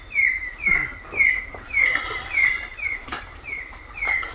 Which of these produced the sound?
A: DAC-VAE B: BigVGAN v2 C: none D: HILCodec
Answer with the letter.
B